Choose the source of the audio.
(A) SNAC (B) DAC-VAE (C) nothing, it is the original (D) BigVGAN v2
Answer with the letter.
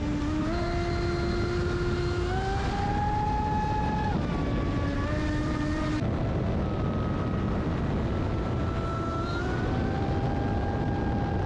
C